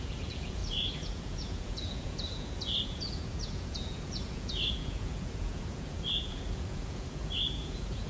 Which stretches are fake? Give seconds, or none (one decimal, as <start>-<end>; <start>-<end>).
0.0-8.1